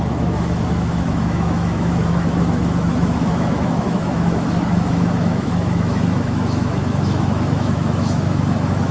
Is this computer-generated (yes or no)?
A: yes